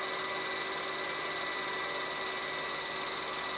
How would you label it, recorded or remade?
recorded